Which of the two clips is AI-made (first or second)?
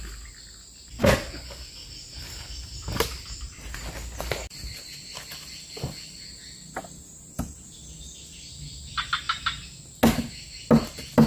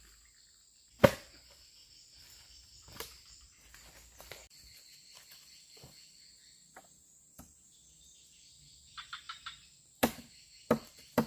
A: second